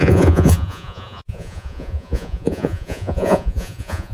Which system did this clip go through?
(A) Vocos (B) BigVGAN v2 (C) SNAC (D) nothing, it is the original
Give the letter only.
A